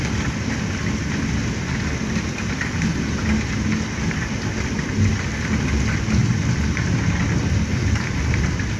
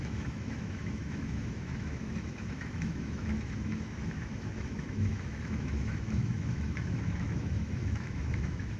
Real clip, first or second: first